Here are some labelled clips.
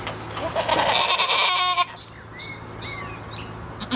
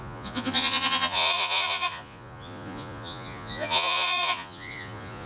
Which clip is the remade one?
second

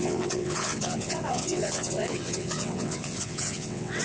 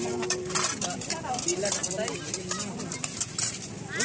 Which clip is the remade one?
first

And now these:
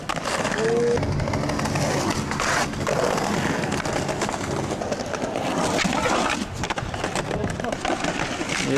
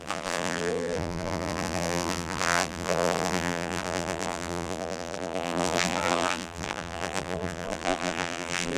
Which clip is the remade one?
second